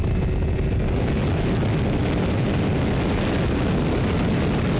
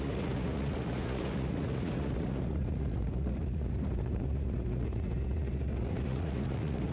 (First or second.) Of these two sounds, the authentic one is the first